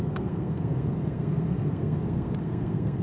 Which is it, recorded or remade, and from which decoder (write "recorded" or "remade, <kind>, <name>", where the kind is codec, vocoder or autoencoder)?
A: remade, codec, SNAC